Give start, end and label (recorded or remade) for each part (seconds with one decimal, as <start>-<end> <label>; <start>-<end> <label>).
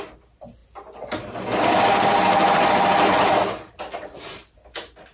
0.0-5.1 recorded